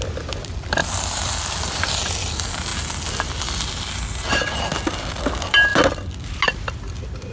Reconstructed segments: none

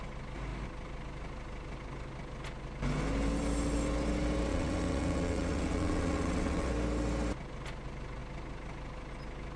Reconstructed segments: 4.5-6.7

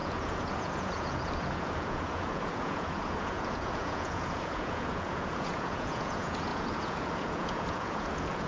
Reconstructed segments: 0.0-8.5

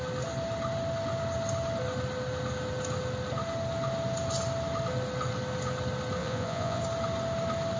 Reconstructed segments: 6.2-6.8

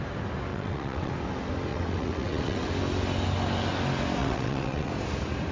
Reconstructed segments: 0.5-1.1; 1.7-2.7; 4.2-4.9

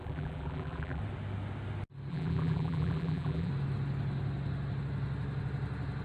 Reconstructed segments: 0.0-1.0; 2.1-3.5

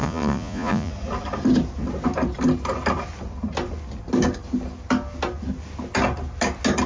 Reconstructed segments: 0.0-0.9